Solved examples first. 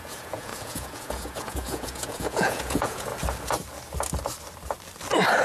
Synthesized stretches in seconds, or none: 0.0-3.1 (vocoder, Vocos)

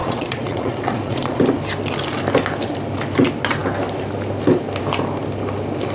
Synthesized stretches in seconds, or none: 0.0-1.4 (vocoder, Vocos)